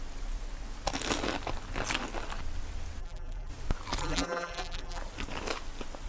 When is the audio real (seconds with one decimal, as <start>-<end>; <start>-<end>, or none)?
0.0-3.0; 3.5-4.0; 5.0-6.1